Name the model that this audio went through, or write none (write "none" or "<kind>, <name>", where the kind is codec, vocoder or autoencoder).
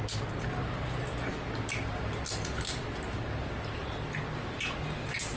none